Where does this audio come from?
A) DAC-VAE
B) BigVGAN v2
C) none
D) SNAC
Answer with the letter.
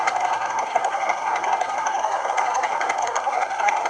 D